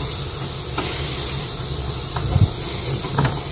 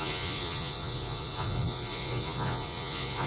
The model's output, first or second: second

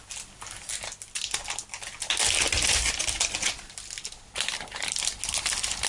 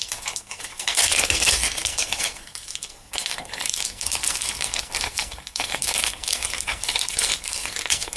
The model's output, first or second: second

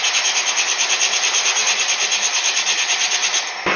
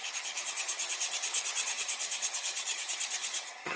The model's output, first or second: second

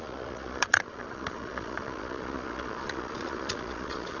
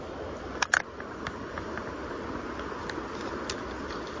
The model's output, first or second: first